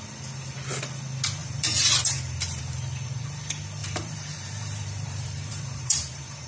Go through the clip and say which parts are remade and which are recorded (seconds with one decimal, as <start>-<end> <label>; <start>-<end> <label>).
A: 0.0-1.4 recorded; 1.4-2.6 remade; 2.6-3.8 recorded; 3.8-6.5 remade